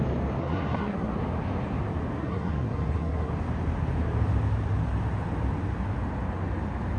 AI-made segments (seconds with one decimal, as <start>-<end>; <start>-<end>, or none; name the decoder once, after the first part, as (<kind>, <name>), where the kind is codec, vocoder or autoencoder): 0.4-1.1 (codec, SNAC); 2.2-3.3